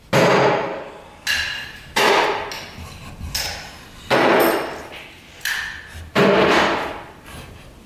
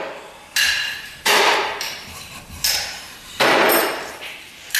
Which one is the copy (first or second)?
second